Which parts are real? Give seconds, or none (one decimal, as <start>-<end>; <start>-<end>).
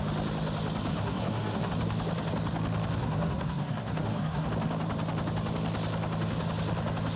0.0-0.9; 1.7-3.0; 4.5-7.2